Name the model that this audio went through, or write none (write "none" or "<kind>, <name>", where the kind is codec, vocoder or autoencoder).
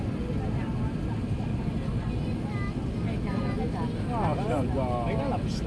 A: none